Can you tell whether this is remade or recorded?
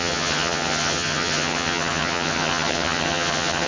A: remade